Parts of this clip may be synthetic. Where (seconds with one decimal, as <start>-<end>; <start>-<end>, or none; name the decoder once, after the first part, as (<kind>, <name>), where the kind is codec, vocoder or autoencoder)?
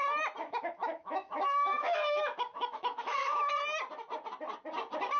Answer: 0.4-3.5 (autoencoder, DAC-VAE)